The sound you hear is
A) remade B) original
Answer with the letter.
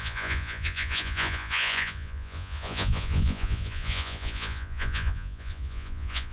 A